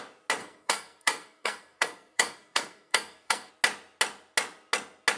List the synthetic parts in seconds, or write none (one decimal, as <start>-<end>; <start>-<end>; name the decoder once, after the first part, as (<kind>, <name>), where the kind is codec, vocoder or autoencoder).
0.4-3.5 (codec, SNAC)